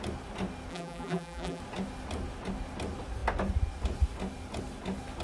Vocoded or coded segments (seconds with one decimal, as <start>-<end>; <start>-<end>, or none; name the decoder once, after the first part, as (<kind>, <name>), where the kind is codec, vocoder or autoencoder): 0.7-1.6 (vocoder, BigVGAN v2)